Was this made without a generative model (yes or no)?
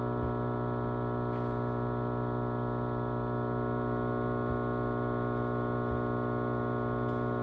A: yes